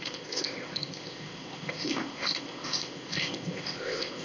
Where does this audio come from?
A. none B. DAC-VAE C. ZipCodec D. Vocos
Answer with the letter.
C